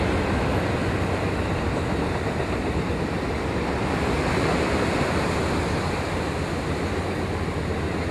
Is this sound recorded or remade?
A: recorded